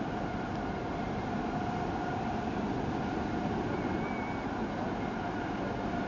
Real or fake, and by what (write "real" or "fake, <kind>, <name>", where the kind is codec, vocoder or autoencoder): real